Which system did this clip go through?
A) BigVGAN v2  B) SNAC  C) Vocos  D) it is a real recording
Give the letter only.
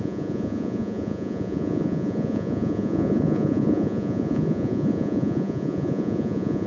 C